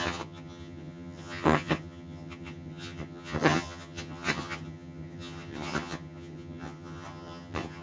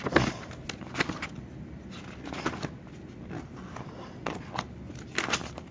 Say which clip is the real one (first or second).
second